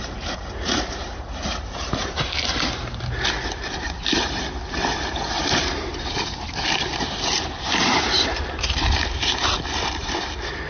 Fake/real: fake